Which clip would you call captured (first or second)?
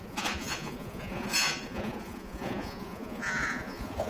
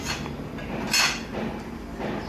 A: second